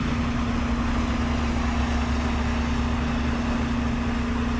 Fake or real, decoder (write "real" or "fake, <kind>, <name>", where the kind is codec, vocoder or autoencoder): real